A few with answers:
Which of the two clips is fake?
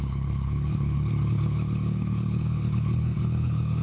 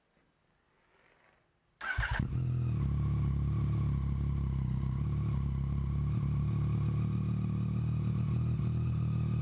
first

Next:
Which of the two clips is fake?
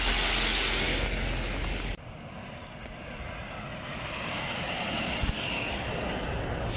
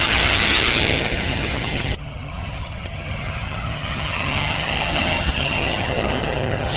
second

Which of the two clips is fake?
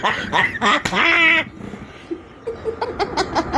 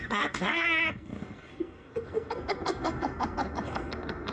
second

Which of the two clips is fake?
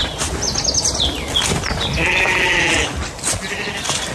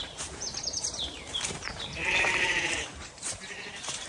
second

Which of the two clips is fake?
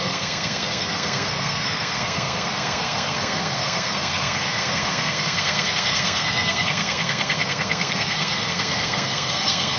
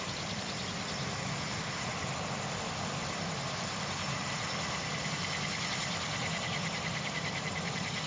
first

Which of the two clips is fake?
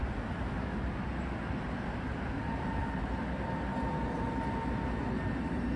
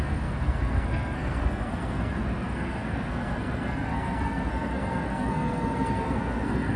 second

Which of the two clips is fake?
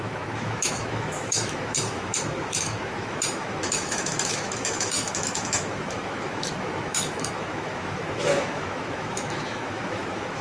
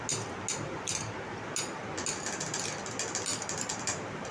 first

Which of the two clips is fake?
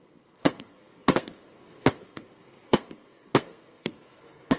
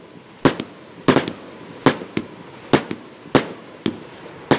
first